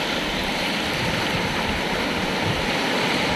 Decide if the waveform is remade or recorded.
recorded